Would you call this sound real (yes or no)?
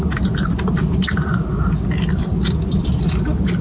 yes